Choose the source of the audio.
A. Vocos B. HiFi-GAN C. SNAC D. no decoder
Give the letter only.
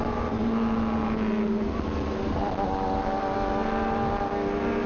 D